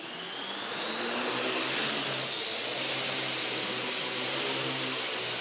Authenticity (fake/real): real